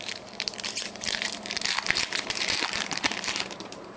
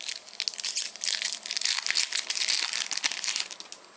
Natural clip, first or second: second